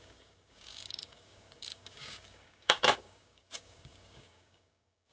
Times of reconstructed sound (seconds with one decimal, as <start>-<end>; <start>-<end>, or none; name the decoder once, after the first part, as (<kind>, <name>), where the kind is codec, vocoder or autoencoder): 0.0-5.1 (codec, DAC)